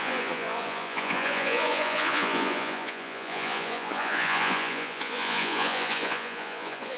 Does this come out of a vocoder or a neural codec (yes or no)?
yes